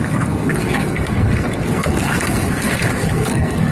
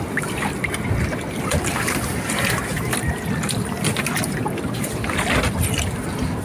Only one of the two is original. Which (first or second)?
second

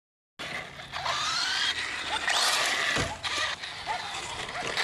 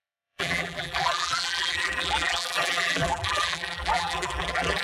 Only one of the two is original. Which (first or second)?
first